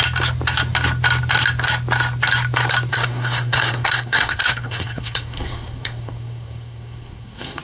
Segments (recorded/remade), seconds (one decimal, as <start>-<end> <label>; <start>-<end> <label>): 0.0-2.9 recorded; 2.9-7.6 remade